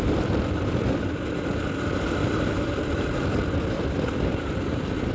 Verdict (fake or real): fake